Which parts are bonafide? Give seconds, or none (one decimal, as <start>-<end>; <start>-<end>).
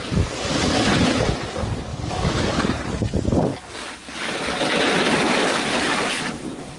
0.0-1.9; 2.6-3.5; 4.3-5.4; 6.2-6.8